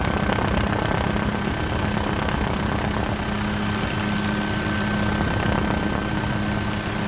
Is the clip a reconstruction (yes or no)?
no